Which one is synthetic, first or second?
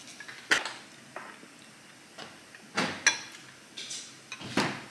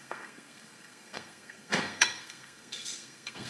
second